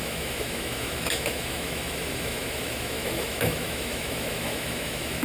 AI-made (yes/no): yes